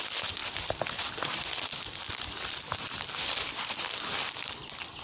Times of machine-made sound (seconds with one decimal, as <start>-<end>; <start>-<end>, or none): 0.0-5.0